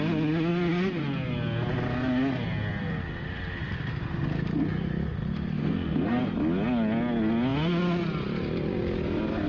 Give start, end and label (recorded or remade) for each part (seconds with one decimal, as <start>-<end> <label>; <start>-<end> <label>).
0.0-5.6 recorded; 5.6-6.2 remade; 6.2-9.5 recorded